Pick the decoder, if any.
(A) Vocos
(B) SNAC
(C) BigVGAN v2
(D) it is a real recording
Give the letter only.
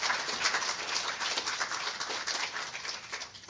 D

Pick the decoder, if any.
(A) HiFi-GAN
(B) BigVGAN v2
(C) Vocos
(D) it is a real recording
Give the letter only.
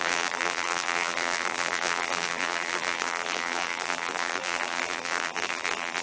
B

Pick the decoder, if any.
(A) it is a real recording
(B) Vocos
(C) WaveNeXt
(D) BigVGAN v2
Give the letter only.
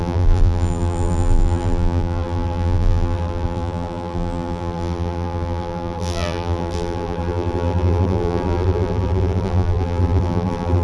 D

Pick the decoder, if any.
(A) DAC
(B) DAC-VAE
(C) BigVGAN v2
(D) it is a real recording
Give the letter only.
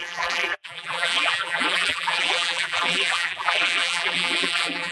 C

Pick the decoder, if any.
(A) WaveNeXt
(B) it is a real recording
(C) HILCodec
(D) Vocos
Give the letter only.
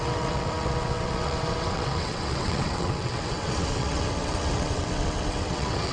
A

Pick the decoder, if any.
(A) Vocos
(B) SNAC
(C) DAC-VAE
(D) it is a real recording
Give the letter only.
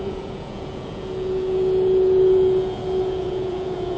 A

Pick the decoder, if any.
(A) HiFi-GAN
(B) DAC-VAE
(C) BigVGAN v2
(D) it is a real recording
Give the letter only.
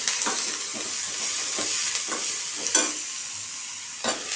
D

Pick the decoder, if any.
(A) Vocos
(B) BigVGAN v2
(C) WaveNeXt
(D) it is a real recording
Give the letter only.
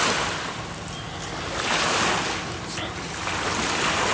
D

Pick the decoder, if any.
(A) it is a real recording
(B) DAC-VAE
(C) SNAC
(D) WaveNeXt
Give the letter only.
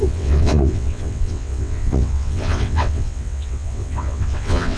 D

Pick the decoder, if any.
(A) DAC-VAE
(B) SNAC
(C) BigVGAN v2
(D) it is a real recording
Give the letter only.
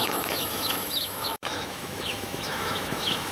A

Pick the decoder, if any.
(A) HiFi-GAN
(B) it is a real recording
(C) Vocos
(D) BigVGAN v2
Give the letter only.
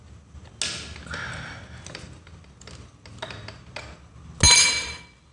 B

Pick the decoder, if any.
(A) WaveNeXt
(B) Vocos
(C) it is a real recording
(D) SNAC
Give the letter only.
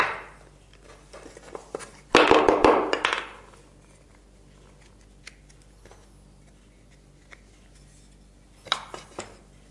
C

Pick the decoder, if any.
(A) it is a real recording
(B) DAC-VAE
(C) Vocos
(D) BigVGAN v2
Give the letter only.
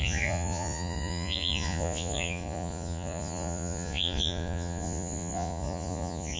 C